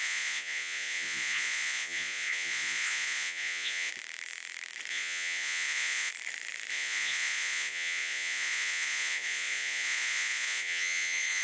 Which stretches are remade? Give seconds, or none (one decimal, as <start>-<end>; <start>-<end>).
0.0-3.9; 4.9-6.1; 6.7-11.4